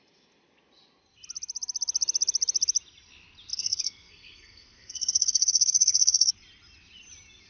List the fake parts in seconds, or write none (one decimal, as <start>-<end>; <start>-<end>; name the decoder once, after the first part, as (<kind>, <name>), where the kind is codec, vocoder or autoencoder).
3.5-6.3 (codec, SNAC)

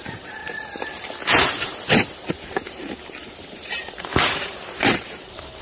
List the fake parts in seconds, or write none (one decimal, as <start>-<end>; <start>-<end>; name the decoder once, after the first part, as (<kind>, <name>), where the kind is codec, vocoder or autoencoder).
0.0-0.4 (vocoder, BigVGAN v2); 2.3-5.6

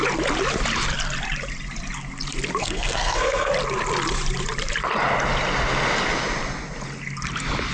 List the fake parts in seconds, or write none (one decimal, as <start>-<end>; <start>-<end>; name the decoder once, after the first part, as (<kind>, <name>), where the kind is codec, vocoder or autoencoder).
2.6-3.5 (codec, SNAC)

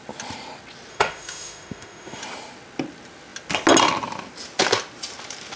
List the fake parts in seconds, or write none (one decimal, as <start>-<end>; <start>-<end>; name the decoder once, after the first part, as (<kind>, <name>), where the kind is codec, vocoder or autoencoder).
0.9-2.2 (autoencoder, DAC-VAE)